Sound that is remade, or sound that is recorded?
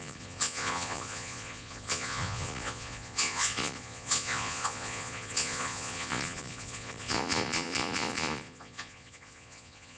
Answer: remade